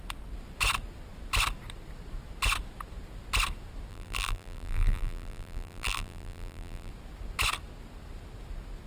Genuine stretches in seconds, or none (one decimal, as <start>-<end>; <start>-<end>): 0.0-3.9; 6.9-8.9